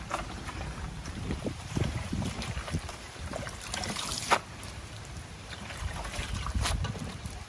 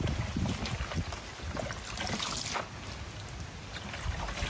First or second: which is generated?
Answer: first